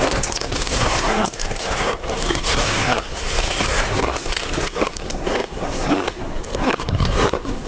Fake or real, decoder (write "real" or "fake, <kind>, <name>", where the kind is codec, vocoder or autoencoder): fake, codec, SNAC